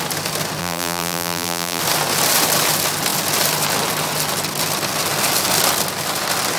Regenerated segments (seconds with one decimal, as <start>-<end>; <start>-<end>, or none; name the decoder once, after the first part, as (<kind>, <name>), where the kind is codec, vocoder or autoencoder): 0.6-1.8 (vocoder, BigVGAN v2)